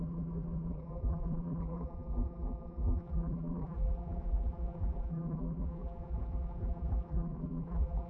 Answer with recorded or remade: remade